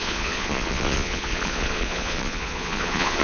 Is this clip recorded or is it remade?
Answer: remade